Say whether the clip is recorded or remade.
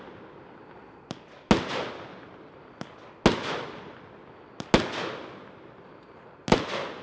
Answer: recorded